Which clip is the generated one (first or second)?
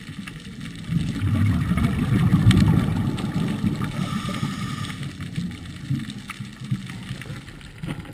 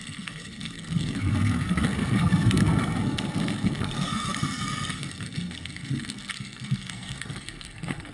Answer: second